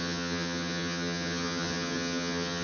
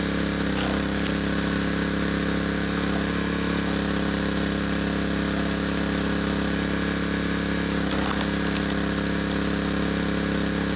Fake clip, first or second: first